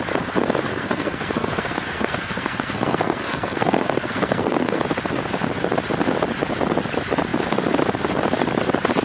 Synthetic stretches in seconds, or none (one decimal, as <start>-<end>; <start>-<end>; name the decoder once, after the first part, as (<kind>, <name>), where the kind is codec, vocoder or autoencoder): 0.7-4.8 (codec, SNAC)